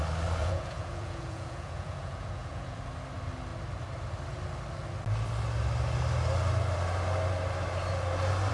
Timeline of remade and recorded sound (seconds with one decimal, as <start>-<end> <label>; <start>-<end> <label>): 0.0-0.4 recorded; 0.4-2.9 remade; 2.9-8.5 recorded